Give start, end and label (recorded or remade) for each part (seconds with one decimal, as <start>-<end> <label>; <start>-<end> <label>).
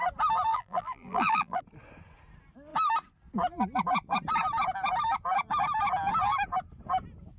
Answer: 0.0-0.5 recorded; 0.5-1.6 remade; 1.6-7.4 recorded